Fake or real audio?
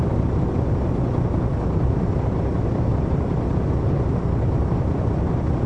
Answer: fake